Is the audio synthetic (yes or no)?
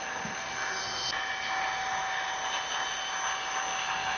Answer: no